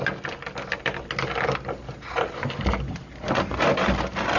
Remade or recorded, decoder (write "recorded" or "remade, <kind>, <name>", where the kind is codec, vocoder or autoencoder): recorded